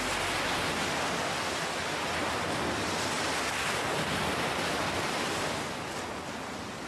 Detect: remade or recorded recorded